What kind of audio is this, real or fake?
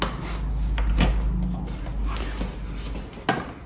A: real